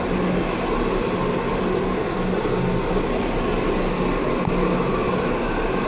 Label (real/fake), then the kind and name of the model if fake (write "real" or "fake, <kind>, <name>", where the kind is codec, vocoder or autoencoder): real